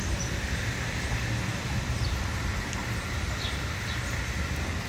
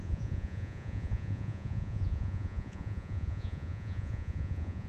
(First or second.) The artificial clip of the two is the second